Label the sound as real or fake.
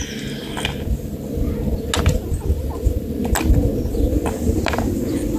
real